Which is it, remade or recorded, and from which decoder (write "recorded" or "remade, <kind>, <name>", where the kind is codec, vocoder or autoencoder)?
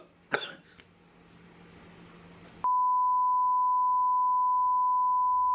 recorded